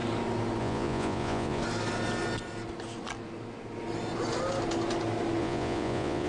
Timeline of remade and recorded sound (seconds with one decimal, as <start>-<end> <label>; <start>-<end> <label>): 0.0-0.6 recorded; 0.6-1.6 remade; 1.6-5.4 recorded; 5.4-6.3 remade

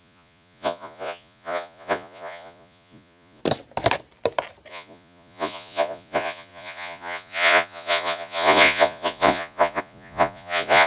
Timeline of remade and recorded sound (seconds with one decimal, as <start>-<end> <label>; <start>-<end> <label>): 0.0-3.4 remade; 3.4-4.7 recorded; 4.7-10.9 remade